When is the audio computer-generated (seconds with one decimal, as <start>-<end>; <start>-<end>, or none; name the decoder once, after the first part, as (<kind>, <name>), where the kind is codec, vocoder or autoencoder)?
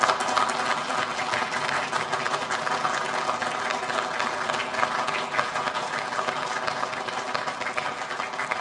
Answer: none